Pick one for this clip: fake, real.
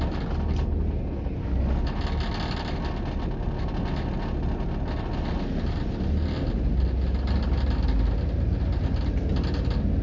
real